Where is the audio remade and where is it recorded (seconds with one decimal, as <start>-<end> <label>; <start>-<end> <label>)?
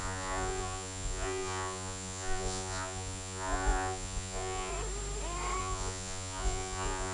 0.0-4.7 remade; 4.7-5.6 recorded; 5.6-7.1 remade